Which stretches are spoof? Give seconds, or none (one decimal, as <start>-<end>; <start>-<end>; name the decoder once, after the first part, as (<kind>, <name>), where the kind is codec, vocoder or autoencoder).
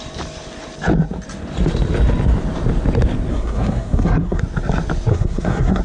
3.3-4.4 (codec, SNAC); 5.1-5.8